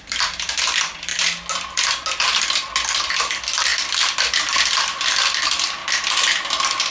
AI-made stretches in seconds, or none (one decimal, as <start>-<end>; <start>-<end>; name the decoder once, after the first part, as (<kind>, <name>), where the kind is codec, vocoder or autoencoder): 0.0-1.1 (vocoder, BigVGAN v2); 3.1-5.8